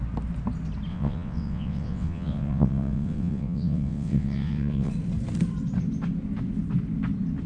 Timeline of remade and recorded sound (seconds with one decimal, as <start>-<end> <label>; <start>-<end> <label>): 0.0-0.9 recorded; 0.9-4.9 remade; 4.9-7.5 recorded